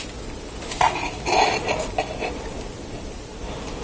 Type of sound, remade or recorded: remade